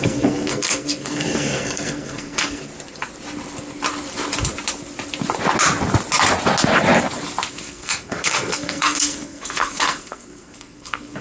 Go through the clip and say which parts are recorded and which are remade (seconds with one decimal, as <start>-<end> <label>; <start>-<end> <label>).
0.0-2.7 remade; 2.7-7.5 recorded; 7.5-11.2 remade